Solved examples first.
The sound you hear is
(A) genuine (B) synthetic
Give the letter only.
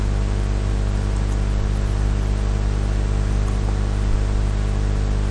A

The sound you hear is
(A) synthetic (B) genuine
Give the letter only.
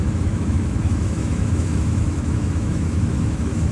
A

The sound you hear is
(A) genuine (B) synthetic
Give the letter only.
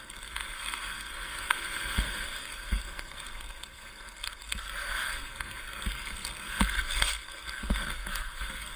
B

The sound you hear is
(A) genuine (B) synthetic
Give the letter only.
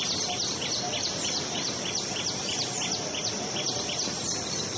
A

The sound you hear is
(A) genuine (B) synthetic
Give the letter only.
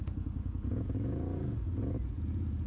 B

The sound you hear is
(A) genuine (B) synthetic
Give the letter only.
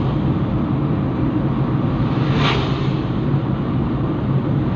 A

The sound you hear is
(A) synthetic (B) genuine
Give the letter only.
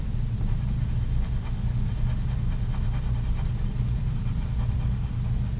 B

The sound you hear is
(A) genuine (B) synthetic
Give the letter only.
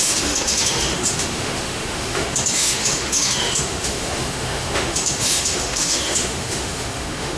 B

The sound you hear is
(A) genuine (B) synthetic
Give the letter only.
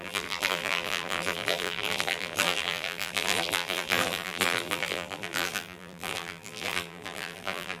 B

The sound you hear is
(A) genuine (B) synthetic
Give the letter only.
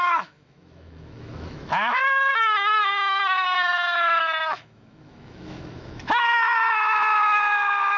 B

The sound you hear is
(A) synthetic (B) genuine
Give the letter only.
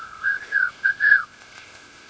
A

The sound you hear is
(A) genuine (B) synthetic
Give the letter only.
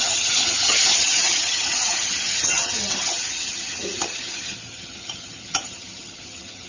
B